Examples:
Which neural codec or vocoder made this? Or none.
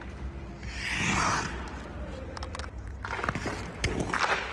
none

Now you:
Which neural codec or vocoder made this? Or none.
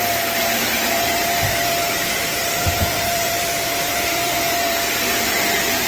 vocoder, BigVGAN v2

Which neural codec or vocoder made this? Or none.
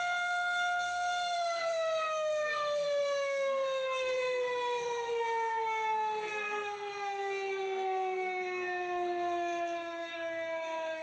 codec, SNAC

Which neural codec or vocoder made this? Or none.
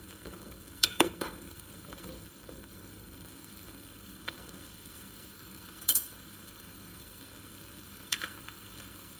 codec, SNAC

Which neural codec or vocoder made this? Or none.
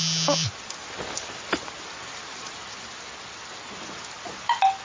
none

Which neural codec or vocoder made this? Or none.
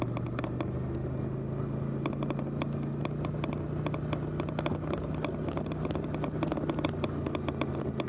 none